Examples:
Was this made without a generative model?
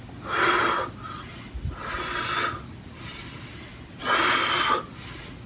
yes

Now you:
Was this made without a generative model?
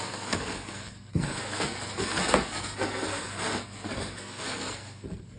no